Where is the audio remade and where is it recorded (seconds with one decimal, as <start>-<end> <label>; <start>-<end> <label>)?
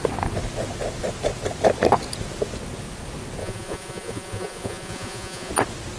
0.0-3.4 recorded; 3.4-5.5 remade; 5.5-6.0 recorded